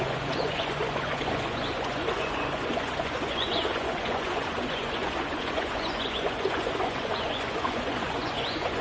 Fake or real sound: fake